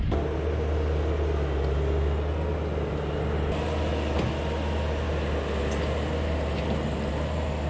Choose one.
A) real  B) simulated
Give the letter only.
A